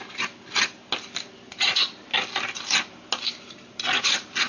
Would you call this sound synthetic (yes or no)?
no